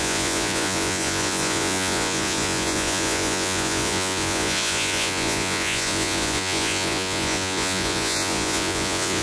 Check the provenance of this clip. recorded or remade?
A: remade